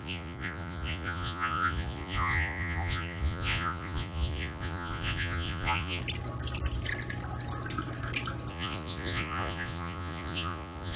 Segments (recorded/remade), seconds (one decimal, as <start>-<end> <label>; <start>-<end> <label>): 0.0-6.0 remade; 6.0-8.5 recorded; 8.5-11.0 remade